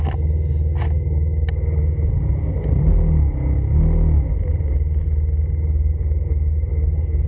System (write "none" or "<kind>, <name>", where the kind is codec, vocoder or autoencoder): none